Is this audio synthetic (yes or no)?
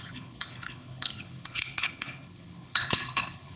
yes